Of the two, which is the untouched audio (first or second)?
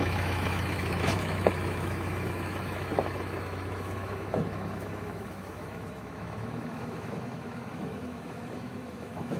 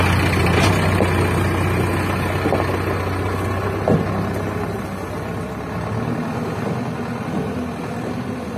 second